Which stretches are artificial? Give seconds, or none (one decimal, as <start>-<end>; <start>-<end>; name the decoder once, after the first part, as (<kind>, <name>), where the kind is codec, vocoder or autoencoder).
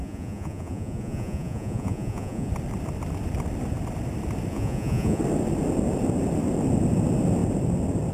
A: 0.0-2.5 (vocoder, Vocos); 4.5-5.2